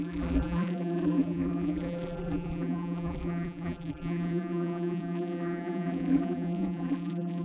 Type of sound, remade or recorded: remade